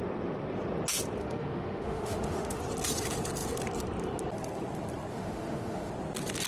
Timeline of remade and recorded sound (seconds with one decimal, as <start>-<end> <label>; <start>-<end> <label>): 0.0-1.2 recorded; 1.2-2.6 remade; 2.6-5.1 recorded; 5.1-5.9 remade; 5.9-6.5 recorded